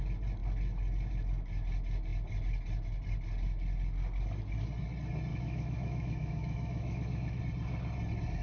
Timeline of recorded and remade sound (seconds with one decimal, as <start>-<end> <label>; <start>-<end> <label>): 0.0-5.3 recorded; 5.3-7.4 remade; 7.4-8.4 recorded

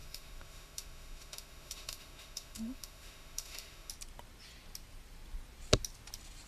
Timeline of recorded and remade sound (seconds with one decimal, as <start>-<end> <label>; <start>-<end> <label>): 0.0-3.9 remade; 3.9-6.5 recorded

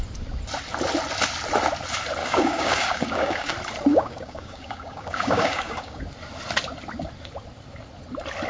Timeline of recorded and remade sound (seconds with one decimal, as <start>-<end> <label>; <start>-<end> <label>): 0.0-2.2 recorded; 2.2-3.5 remade; 3.5-3.9 recorded; 3.9-6.0 remade; 6.0-8.5 recorded

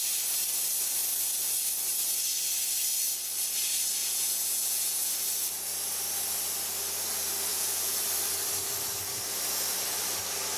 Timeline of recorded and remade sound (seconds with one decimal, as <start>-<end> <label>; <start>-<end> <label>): 0.0-4.0 recorded; 4.0-5.1 remade; 5.1-7.5 recorded; 7.5-8.0 remade; 8.0-10.6 recorded

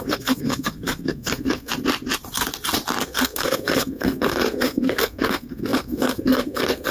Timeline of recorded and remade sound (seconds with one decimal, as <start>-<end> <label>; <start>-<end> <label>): 0.0-1.7 remade; 1.7-3.0 recorded; 3.0-6.9 remade

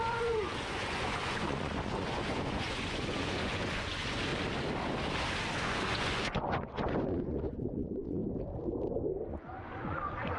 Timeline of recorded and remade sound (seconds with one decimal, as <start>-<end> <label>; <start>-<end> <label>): 0.0-4.3 remade; 4.3-5.6 recorded; 5.6-8.2 remade; 8.2-9.3 recorded; 9.3-10.4 remade

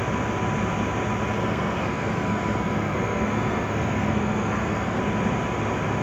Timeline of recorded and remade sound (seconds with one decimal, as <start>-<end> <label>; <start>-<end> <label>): 0.0-1.4 recorded; 1.4-5.0 remade; 5.0-6.0 recorded

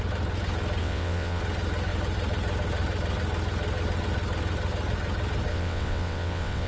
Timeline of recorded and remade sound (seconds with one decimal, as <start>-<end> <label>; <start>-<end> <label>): 0.0-0.8 recorded; 0.8-1.4 remade; 1.4-5.5 recorded; 5.5-6.7 remade